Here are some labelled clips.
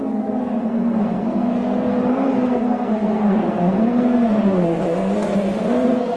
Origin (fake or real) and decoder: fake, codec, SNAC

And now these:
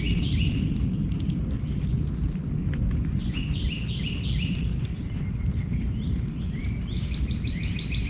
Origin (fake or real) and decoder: real